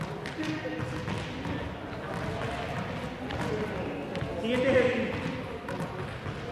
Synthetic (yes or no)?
no